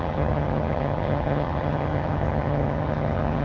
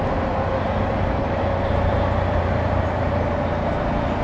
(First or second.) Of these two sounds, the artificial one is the first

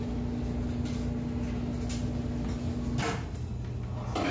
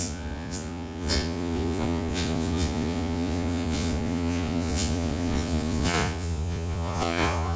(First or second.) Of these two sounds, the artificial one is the second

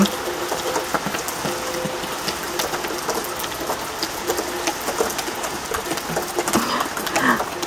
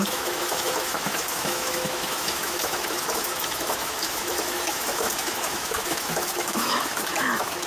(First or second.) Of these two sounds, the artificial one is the second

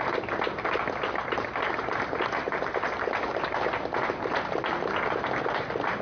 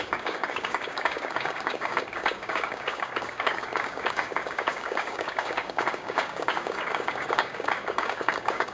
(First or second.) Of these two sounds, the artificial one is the second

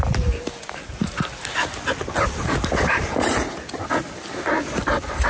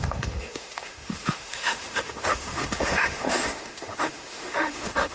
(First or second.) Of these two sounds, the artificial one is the second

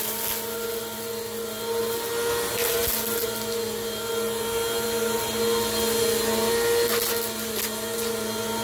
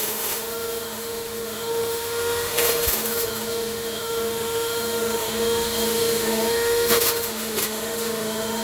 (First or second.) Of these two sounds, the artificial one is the second